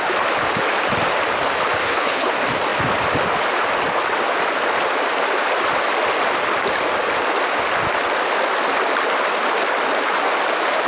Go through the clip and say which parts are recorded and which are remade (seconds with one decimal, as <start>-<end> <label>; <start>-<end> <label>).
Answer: 0.0-1.8 recorded; 1.8-2.3 remade; 2.3-10.9 recorded